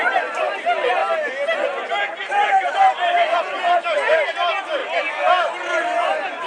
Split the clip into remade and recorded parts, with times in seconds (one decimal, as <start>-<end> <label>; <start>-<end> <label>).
0.0-6.5 recorded